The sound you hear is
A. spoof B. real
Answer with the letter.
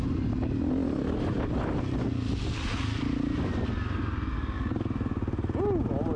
B